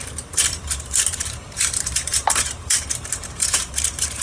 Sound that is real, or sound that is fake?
fake